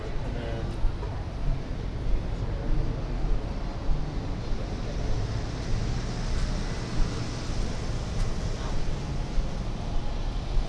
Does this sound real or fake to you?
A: real